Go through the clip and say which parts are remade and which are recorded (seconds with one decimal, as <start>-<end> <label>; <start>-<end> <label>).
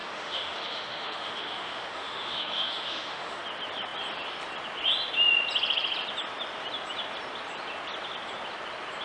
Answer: 0.0-3.4 remade; 3.4-9.0 recorded